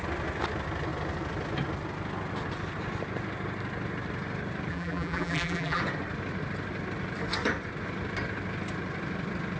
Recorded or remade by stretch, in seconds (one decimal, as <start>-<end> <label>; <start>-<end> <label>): 0.0-4.7 recorded; 4.7-5.8 remade; 5.8-9.6 recorded